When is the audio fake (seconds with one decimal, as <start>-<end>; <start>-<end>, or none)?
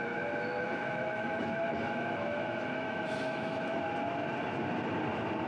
0.5-3.8